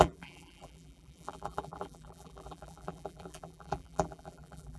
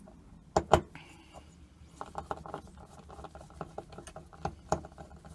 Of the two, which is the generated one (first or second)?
first